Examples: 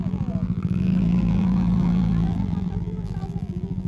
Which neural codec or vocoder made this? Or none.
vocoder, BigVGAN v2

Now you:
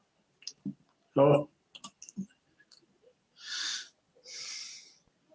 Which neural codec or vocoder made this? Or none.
none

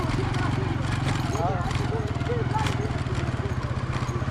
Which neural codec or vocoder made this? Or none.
none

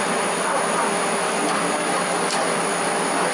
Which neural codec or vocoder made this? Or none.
none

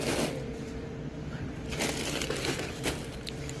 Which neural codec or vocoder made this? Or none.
vocoder, BigVGAN v2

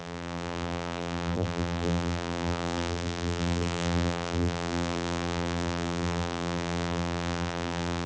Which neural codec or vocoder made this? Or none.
vocoder, BigVGAN v2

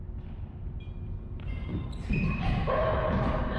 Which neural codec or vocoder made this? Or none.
none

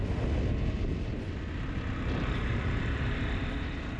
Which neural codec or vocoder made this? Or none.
none